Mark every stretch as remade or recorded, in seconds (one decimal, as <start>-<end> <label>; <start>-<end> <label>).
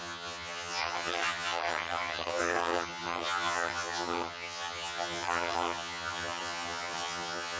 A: 0.0-7.6 remade